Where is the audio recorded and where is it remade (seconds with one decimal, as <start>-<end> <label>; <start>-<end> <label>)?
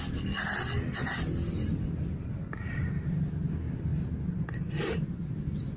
0.0-5.8 recorded